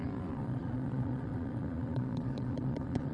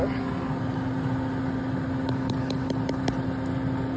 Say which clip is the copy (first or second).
first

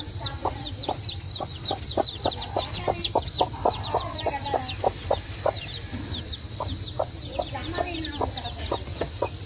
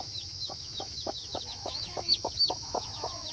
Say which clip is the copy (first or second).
second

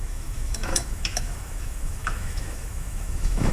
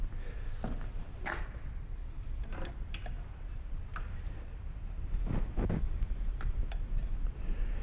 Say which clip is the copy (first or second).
first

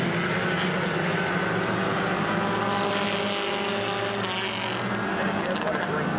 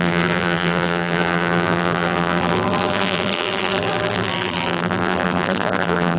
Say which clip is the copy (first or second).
second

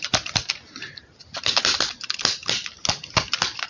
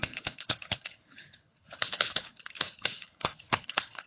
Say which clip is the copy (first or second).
second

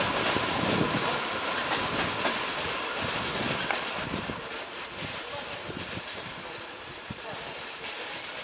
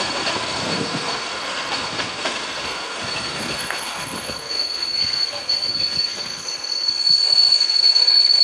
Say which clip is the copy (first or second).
second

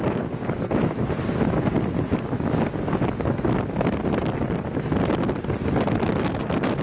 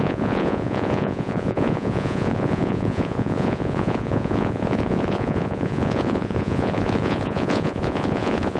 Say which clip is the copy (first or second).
second